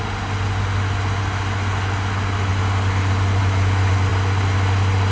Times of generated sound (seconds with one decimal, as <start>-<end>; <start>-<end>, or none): none